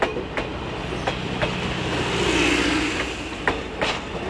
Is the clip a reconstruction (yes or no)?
no